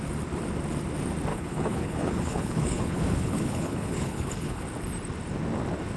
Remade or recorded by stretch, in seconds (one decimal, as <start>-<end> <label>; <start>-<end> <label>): 0.0-1.3 recorded; 1.3-4.6 remade; 4.6-6.0 recorded